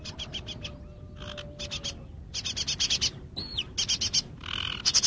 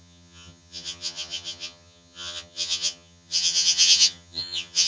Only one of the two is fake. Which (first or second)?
second